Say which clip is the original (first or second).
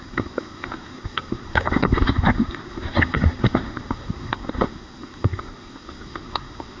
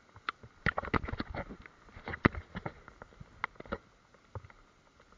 second